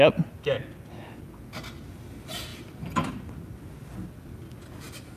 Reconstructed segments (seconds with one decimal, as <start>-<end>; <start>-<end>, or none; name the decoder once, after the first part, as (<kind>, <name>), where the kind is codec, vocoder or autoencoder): 2.5-3.1 (vocoder, BigVGAN v2)